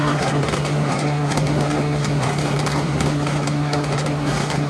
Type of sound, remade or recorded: remade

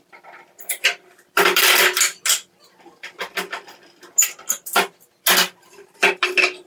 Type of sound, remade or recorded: recorded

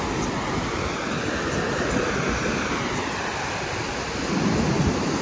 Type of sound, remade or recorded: recorded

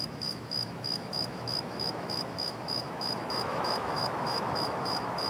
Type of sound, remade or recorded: remade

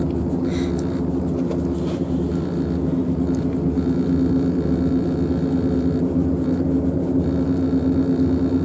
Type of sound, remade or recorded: recorded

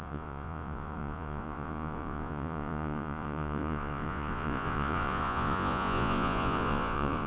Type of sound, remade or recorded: remade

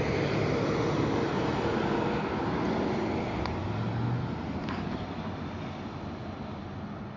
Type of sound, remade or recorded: recorded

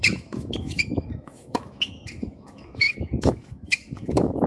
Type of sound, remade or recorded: remade